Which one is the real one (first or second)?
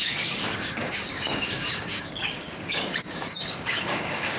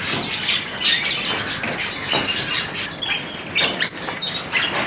second